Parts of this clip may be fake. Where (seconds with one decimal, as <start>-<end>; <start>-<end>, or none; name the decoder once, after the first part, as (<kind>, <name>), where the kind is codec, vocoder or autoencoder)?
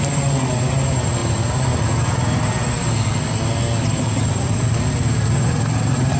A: none